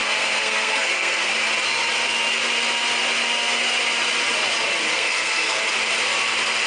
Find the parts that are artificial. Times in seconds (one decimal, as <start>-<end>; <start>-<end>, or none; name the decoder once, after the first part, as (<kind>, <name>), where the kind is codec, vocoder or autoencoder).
0.0-1.3 (codec, SNAC); 4.9-5.6